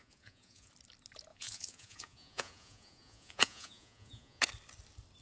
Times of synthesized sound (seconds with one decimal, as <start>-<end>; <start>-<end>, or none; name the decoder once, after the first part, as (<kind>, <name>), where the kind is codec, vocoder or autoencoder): 0.0-0.7 (vocoder, Vocos); 1.3-4.4

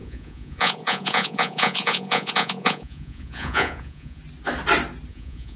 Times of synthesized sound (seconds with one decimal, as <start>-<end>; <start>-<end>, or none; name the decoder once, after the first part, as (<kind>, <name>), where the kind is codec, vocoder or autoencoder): 0.0-4.2 (vocoder, Vocos); 5.1-5.6

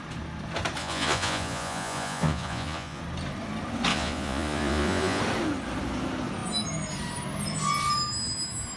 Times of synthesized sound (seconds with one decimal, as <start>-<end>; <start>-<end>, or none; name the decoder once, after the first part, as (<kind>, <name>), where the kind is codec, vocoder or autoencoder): 0.8-3.0 (vocoder, Vocos); 3.9-5.2

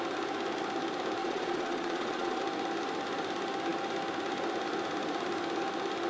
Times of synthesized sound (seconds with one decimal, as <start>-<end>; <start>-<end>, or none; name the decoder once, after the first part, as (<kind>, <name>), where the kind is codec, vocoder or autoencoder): 1.2-2.4 (vocoder, Vocos)

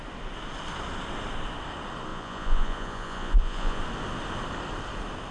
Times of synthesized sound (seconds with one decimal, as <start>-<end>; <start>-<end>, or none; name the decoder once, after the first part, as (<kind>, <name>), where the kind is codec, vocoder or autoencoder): 2.1-3.8 (vocoder, Vocos)